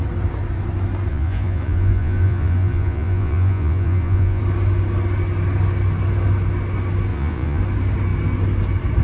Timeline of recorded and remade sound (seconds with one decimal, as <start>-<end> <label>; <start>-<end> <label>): 0.0-1.1 recorded; 1.1-4.4 remade; 4.4-7.1 recorded; 7.1-7.6 remade; 7.6-9.0 recorded